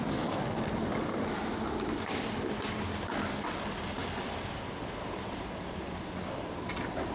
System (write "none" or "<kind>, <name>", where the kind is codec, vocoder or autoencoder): none